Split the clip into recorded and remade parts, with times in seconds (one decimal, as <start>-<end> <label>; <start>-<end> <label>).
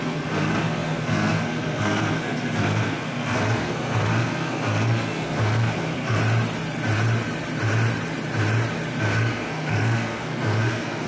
0.0-6.2 remade; 6.2-9.0 recorded; 9.0-11.1 remade